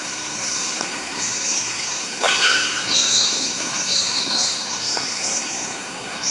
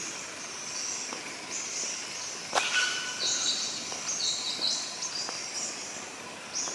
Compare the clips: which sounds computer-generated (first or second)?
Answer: first